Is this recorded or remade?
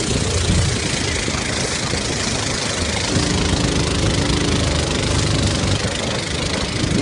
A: recorded